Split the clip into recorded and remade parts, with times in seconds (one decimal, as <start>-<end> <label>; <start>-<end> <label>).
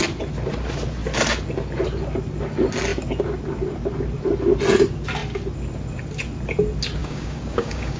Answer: 0.0-7.0 recorded; 7.0-8.0 remade